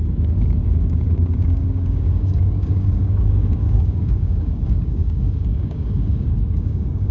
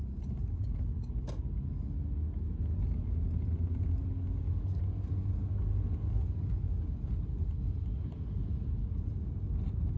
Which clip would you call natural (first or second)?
second